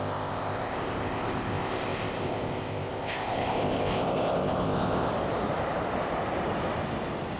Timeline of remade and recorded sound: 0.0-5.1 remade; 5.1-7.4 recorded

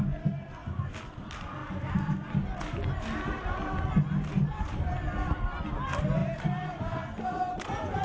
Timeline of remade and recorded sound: 0.0-8.0 recorded

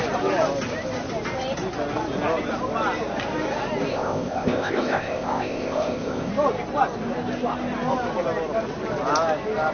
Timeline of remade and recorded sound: 0.0-3.9 recorded; 3.9-6.3 remade; 6.3-9.7 recorded

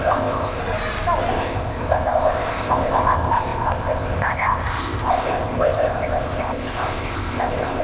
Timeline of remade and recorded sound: 0.0-0.6 remade; 0.6-1.3 recorded; 1.3-7.8 remade

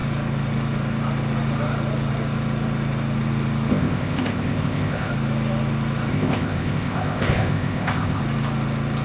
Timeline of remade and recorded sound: 0.0-3.7 recorded; 3.7-5.1 remade; 5.1-6.1 recorded; 6.1-8.2 remade; 8.2-9.0 recorded

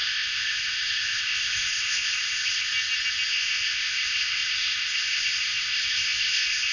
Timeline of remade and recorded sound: 0.0-2.7 remade; 2.7-3.3 recorded; 3.3-6.7 remade

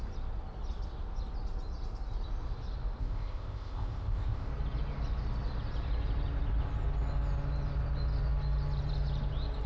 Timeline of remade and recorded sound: 0.0-3.0 recorded; 3.0-4.5 remade; 4.5-9.7 recorded